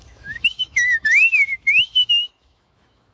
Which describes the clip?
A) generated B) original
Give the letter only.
A